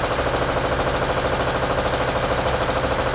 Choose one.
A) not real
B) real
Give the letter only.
B